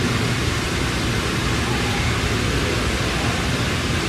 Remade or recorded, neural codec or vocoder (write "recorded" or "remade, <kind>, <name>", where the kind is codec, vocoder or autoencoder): recorded